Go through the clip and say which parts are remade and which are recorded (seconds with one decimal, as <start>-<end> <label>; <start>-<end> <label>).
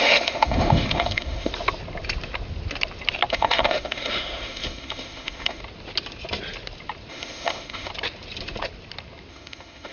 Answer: 0.0-1.5 remade; 1.5-3.3 recorded; 3.3-5.6 remade; 5.6-7.1 recorded; 7.1-7.9 remade; 7.9-9.3 recorded; 9.3-9.9 remade